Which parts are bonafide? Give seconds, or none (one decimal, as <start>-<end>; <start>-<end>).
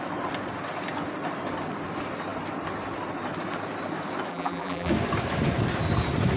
0.0-4.3; 4.9-6.4